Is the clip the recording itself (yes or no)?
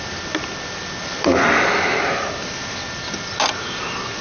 yes